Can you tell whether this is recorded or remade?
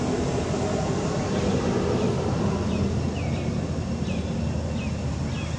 recorded